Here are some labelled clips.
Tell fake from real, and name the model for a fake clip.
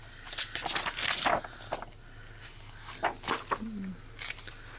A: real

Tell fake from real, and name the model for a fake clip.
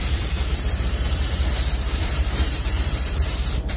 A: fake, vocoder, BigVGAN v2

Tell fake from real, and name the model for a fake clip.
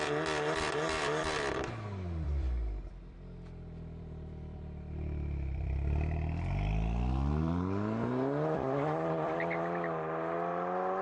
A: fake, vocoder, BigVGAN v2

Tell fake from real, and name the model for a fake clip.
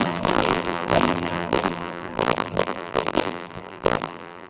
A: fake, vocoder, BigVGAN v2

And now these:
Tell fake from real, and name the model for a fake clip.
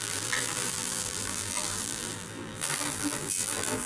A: fake, vocoder, BigVGAN v2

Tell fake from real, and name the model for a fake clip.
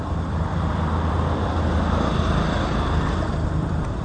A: fake, vocoder, BigVGAN v2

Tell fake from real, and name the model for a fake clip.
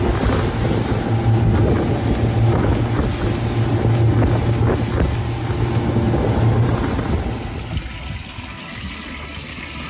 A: real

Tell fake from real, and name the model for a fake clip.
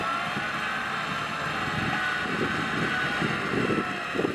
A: real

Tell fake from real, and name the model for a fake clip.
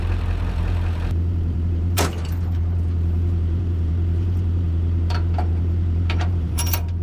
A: fake, vocoder, BigVGAN v2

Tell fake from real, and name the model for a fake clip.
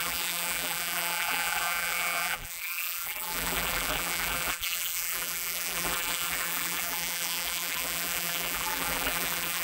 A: fake, vocoder, BigVGAN v2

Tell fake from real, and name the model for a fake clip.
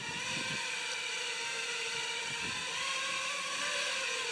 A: fake, vocoder, BigVGAN v2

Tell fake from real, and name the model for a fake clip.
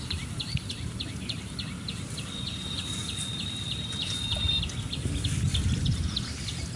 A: fake, vocoder, BigVGAN v2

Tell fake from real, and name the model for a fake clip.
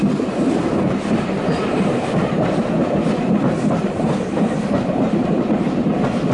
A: fake, vocoder, BigVGAN v2